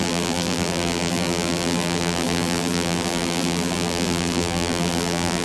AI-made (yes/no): yes